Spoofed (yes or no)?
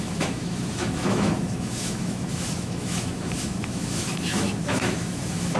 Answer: yes